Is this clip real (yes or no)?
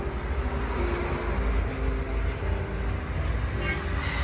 yes